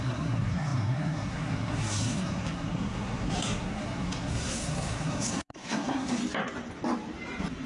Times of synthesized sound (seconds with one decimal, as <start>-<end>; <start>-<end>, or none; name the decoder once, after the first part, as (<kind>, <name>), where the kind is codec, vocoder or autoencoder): 0.0-6.2 (codec, SNAC)